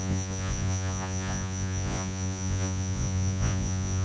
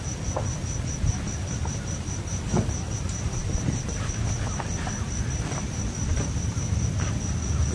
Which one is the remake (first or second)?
first